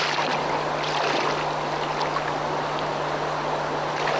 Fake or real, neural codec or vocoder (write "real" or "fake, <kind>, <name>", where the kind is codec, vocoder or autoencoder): real